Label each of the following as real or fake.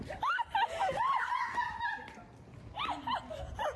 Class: real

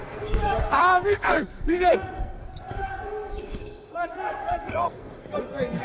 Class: fake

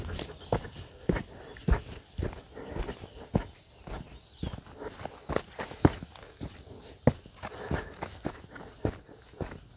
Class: real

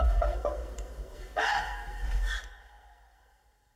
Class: fake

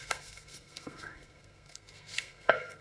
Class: fake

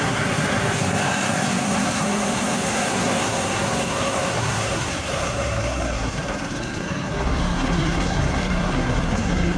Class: fake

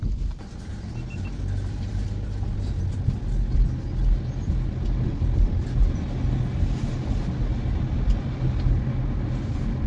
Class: real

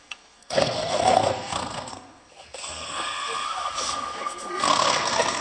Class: fake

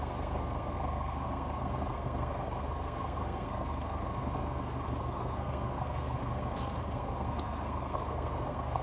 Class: fake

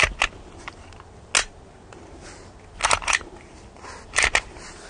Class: real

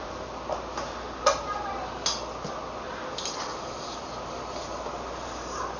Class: real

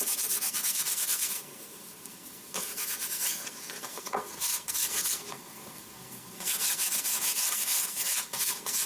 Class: fake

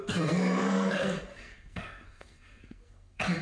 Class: fake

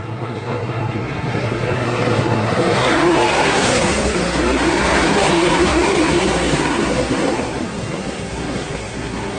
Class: fake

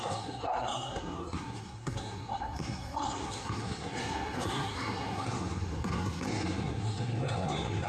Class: fake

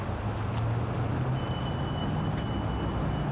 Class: real